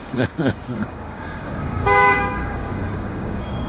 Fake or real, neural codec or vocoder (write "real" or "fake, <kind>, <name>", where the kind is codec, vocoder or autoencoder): fake, codec, DAC